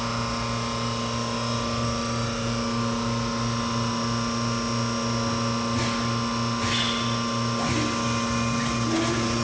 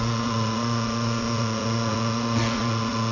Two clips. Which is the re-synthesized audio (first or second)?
second